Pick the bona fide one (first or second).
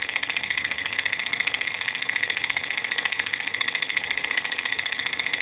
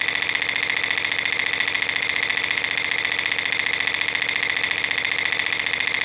second